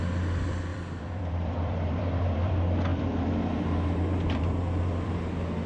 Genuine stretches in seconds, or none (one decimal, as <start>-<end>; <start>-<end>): 0.0-0.7; 2.5-2.9; 5.1-5.7